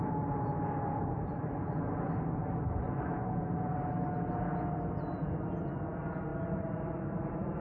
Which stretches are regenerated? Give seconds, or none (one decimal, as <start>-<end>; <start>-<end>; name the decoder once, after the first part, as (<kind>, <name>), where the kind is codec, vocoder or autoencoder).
none